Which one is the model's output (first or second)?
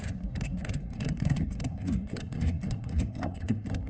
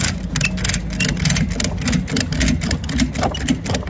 first